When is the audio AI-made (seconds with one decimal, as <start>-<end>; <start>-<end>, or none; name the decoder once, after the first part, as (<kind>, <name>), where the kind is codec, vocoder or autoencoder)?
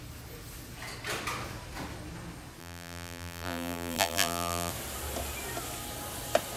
2.6-4.7 (vocoder, BigVGAN v2)